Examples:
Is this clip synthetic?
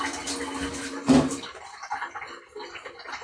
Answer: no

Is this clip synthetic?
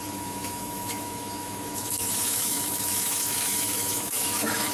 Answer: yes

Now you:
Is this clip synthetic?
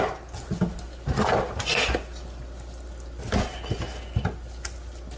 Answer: no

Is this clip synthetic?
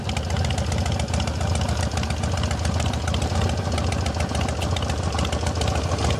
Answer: no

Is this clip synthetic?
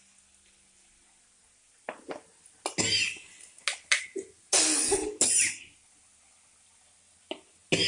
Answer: no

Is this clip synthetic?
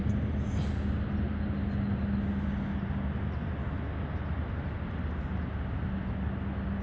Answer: no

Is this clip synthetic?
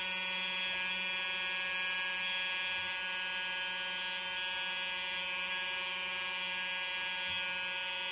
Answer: no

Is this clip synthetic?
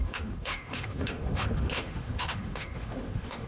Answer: yes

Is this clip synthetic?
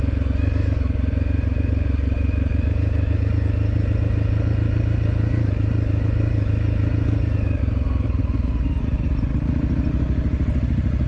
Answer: no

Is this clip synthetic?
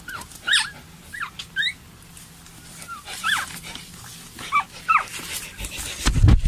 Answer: no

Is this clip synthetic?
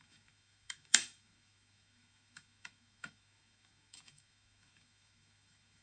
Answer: yes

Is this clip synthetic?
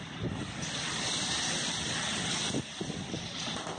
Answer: no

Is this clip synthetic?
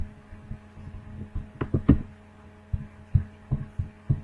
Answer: no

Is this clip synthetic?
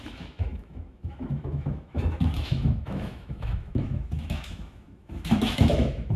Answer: yes